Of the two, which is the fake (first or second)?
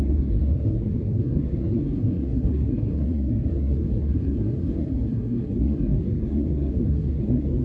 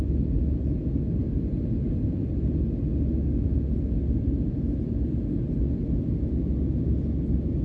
first